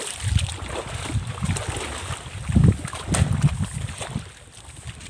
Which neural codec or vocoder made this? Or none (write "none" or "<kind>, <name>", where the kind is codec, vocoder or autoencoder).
none